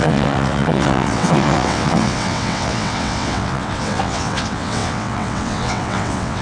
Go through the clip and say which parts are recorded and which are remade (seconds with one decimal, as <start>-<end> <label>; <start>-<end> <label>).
0.0-6.4 remade